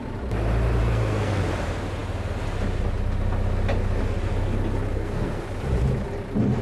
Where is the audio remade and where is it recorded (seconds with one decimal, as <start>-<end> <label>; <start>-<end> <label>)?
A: 0.0-0.8 recorded; 0.8-1.4 remade; 1.4-4.9 recorded; 4.9-5.4 remade; 5.4-6.6 recorded